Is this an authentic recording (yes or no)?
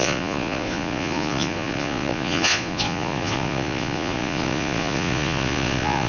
no